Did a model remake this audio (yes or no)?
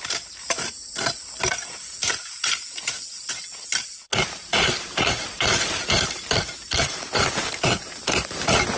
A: yes